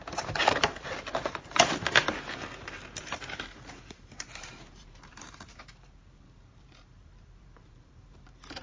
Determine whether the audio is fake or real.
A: fake